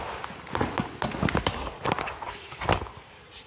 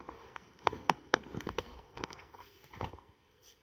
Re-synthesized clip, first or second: second